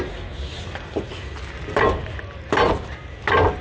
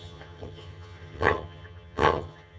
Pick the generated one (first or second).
second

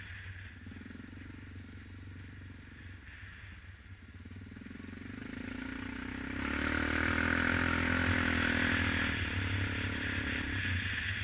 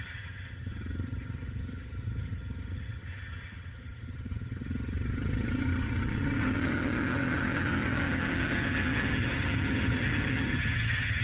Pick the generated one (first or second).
second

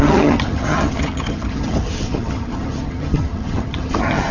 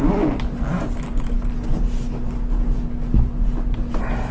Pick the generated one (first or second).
first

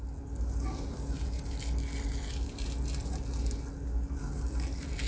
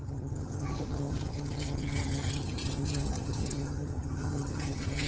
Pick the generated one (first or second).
second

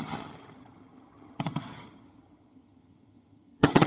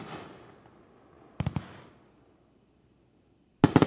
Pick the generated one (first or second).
first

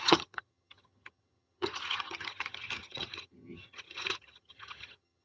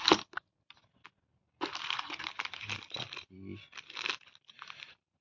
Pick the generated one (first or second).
first